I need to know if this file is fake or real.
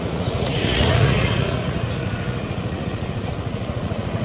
fake